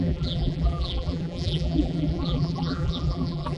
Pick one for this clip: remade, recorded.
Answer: remade